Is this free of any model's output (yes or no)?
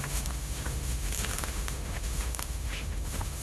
no